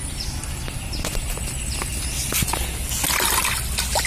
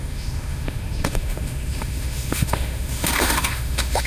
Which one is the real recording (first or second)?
first